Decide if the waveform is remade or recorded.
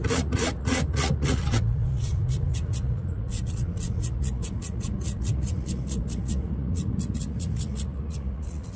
remade